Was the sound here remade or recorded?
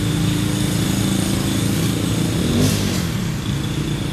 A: recorded